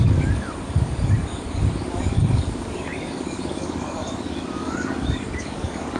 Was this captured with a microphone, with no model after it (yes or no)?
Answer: no